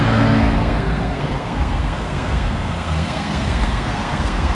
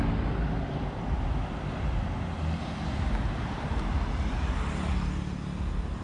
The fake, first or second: first